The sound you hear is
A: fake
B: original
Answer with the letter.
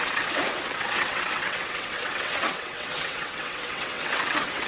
A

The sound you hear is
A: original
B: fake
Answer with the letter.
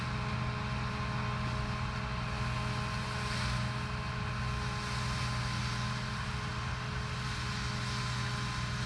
A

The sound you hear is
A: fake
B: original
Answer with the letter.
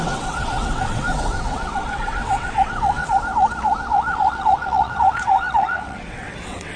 A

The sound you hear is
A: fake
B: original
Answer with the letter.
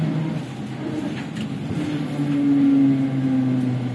B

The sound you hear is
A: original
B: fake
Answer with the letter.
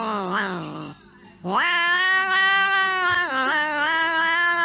A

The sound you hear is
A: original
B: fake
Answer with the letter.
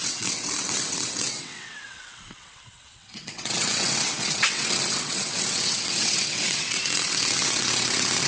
B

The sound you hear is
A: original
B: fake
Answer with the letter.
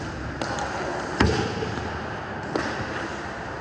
A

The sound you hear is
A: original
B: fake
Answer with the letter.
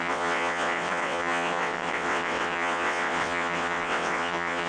B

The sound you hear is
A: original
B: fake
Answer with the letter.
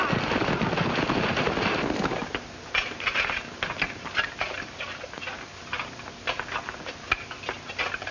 A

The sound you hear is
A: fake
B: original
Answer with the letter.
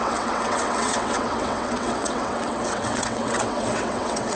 A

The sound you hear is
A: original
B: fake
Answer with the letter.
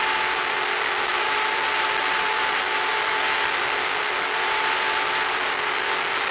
A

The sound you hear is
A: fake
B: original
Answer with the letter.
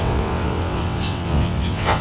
A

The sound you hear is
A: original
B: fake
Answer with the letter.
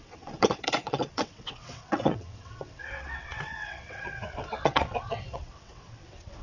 B